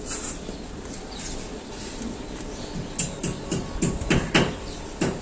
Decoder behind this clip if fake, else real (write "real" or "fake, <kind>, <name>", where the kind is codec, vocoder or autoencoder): real